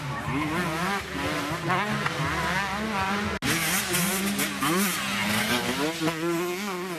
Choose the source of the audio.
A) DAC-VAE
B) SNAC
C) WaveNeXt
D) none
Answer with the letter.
D